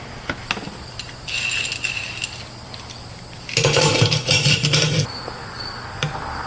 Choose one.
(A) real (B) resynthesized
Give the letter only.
A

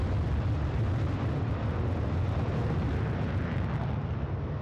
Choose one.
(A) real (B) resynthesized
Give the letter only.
A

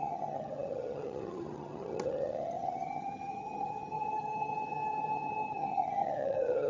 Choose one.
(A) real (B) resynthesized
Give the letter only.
B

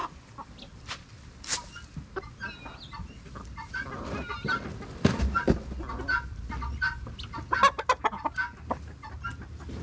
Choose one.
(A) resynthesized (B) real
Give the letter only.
B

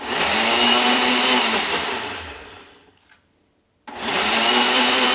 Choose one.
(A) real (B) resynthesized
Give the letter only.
B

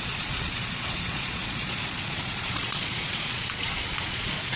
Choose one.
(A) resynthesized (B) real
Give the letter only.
A